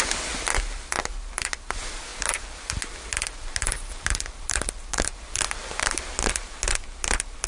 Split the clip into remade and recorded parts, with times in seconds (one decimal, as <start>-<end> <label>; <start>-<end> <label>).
0.0-2.1 recorded; 2.1-6.0 remade; 6.0-7.5 recorded